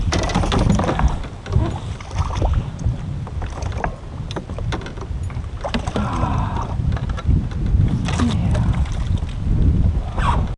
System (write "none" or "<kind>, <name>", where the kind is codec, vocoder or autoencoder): none